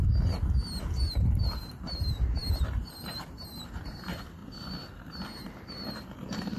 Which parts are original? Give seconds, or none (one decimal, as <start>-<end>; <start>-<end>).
0.0-0.8; 4.4-5.9